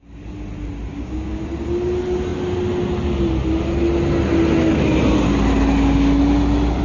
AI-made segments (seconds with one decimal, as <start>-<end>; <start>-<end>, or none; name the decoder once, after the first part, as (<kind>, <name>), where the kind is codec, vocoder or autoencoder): 0.9-1.4 (codec, DAC)